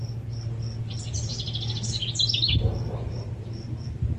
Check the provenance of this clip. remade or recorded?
recorded